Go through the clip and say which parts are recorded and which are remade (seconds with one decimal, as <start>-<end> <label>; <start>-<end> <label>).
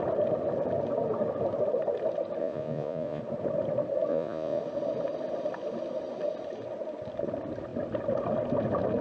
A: 0.0-2.4 recorded; 2.4-3.2 remade; 3.2-4.1 recorded; 4.1-4.6 remade; 4.6-9.0 recorded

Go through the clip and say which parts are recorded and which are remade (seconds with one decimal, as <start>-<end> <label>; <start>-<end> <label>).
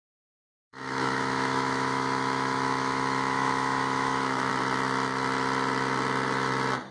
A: 0.0-0.4 recorded; 0.4-4.5 remade; 4.5-6.9 recorded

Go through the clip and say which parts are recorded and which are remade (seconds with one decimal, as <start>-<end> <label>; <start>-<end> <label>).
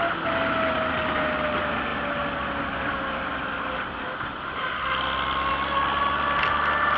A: 0.0-7.0 recorded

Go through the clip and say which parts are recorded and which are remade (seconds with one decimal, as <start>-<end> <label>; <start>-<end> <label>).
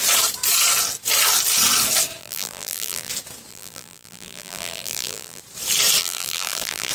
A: 0.0-2.2 recorded; 2.2-3.1 remade; 3.1-3.5 recorded; 3.5-5.4 remade; 5.4-6.0 recorded; 6.0-6.9 remade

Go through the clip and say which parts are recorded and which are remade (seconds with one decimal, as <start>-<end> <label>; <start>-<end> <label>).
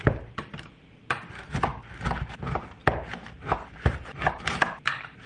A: 0.0-1.7 remade; 1.7-2.2 recorded; 2.2-2.8 remade; 2.8-3.4 recorded; 3.4-5.3 remade